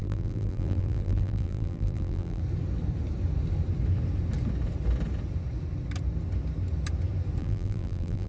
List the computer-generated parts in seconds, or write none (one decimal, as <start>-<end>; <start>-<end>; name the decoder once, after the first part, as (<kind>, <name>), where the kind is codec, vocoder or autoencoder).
0.0-2.4 (vocoder, BigVGAN v2); 7.4-8.3